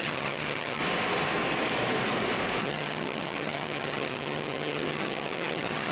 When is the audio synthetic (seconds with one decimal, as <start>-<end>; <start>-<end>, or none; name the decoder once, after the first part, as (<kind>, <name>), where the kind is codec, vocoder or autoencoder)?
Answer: 0.0-0.8 (vocoder, HiFi-GAN); 2.6-5.9